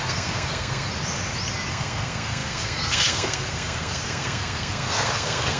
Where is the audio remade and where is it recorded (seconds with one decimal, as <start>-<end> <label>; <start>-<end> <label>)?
0.0-0.9 remade; 0.9-1.7 recorded; 1.7-5.6 remade